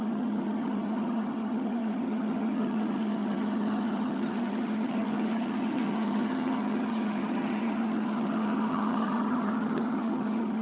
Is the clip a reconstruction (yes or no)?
yes